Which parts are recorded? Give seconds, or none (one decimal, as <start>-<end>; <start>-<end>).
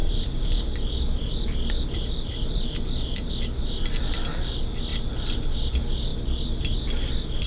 3.3-6.1; 6.6-7.5